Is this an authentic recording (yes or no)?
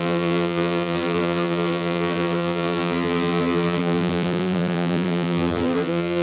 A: no